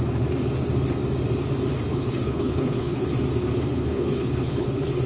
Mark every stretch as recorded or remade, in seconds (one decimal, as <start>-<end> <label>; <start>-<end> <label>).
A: 0.0-1.9 recorded; 1.9-3.1 remade; 3.1-3.7 recorded; 3.7-5.1 remade